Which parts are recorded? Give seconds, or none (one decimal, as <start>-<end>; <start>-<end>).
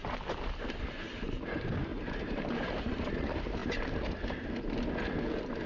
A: 0.0-1.9; 3.1-3.6; 4.6-5.7